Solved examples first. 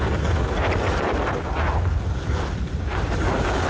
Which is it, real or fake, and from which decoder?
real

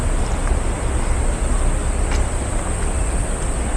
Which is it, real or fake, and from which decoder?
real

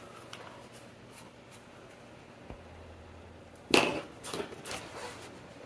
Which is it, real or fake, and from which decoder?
real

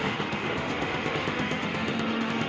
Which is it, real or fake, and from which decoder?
fake, autoencoder, DAC-VAE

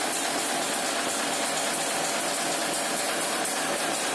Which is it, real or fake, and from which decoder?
real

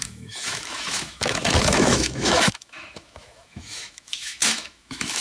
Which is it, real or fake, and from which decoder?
fake, autoencoder, DAC-VAE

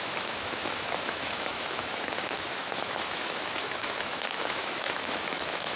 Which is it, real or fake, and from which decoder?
fake, autoencoder, DAC-VAE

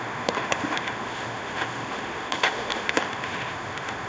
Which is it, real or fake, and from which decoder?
fake, autoencoder, DAC-VAE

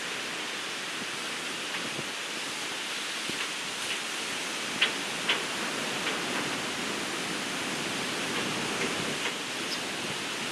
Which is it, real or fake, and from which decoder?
real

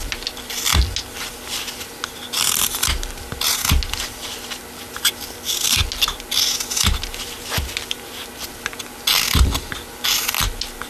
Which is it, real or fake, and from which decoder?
real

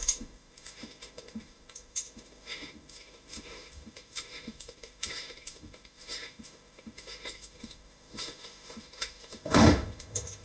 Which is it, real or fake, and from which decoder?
fake, autoencoder, DAC-VAE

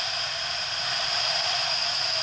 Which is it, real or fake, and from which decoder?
real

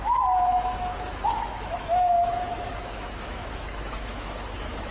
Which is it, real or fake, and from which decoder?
fake, autoencoder, DAC-VAE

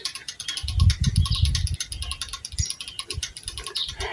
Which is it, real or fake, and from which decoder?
real